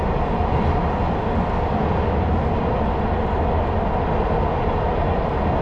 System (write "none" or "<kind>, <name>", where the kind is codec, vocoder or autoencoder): none